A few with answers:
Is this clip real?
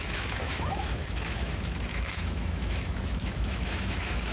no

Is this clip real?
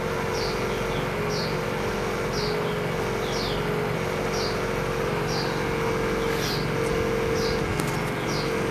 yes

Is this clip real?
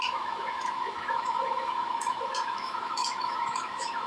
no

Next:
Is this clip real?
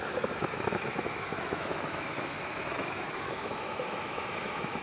no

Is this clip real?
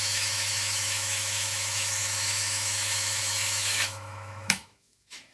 no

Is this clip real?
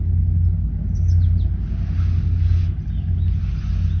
yes